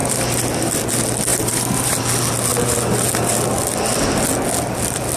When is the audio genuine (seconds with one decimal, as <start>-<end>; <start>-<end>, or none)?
0.0-1.3; 2.0-5.2